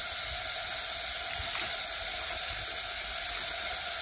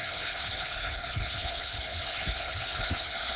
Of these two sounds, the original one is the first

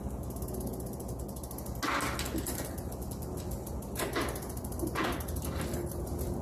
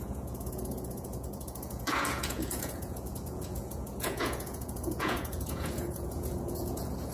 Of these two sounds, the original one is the first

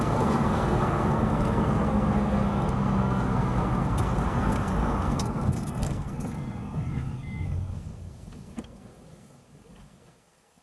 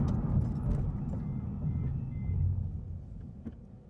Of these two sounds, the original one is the second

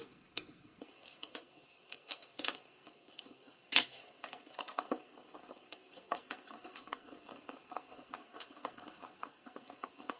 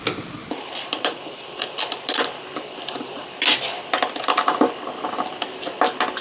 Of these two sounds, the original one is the second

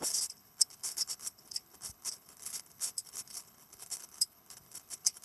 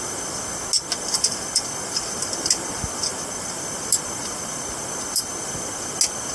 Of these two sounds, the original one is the second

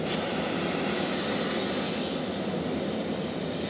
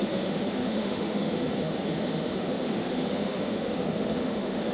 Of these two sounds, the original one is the first